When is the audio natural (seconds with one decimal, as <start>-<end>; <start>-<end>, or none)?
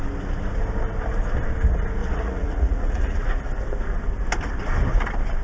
0.0-2.0; 3.3-5.4